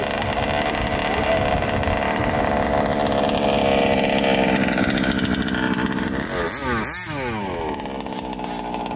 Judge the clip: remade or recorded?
recorded